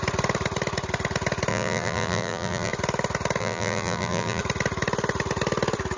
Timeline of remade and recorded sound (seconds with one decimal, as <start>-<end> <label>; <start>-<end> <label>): 0.0-1.5 recorded; 1.5-2.7 remade; 2.7-3.4 recorded; 3.4-4.4 remade; 4.4-6.0 recorded